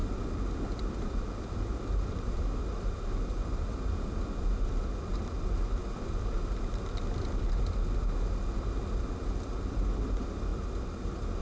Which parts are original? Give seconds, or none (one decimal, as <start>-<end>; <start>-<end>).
5.8-9.0